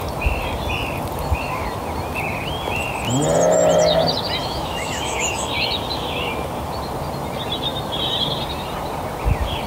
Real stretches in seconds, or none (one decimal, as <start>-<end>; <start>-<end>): 0.0-4.4; 5.5-9.7